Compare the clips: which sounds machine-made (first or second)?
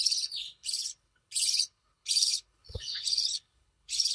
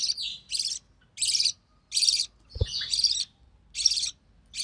first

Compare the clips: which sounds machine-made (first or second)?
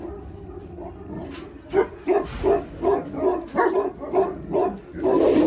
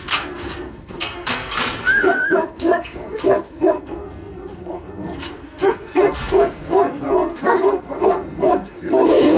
second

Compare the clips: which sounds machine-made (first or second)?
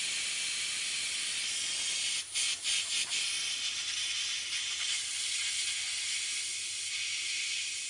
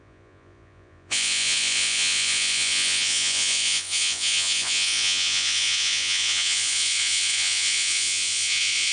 second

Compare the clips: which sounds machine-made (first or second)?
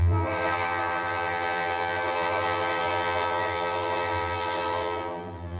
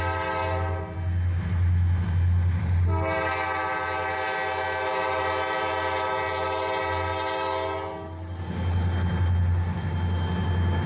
first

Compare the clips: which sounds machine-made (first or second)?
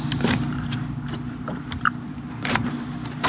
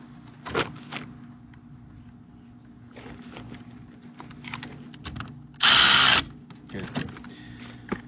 first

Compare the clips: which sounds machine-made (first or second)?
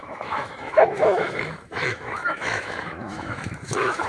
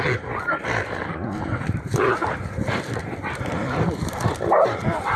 first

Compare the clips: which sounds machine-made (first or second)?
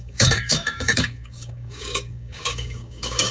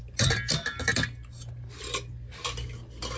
first